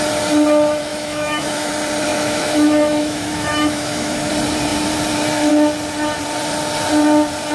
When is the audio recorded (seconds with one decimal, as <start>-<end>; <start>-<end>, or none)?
0.0-0.9; 1.7-2.1; 4.3-7.5